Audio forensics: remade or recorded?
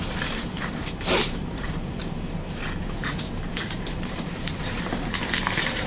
remade